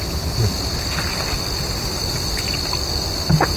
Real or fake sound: real